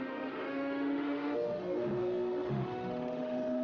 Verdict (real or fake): fake